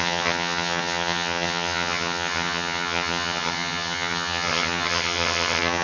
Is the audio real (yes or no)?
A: no